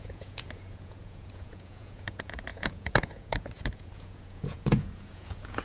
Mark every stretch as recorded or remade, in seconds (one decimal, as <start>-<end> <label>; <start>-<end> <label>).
0.0-5.6 remade